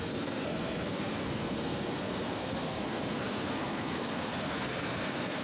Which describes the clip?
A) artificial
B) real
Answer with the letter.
A